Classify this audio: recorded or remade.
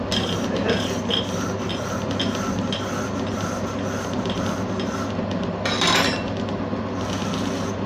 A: recorded